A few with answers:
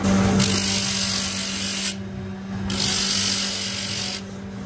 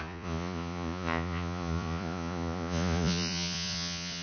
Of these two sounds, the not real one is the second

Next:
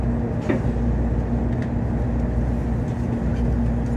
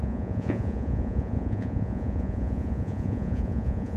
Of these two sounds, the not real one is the second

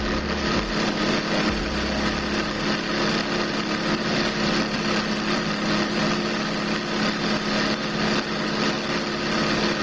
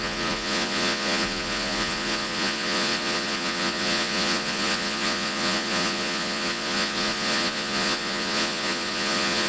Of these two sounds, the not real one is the second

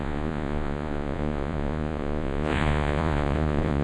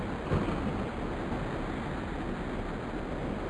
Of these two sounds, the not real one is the first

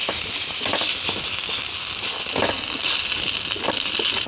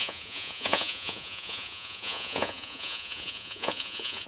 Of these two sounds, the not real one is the second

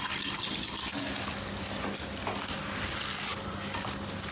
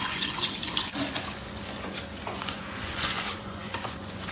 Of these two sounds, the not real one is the second